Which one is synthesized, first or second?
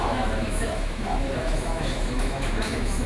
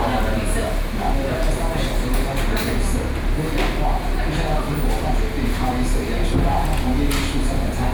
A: first